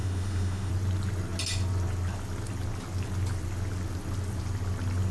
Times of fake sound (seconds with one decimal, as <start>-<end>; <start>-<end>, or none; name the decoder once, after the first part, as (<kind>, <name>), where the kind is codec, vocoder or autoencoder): 0.0-0.7 (autoencoder, DAC-VAE)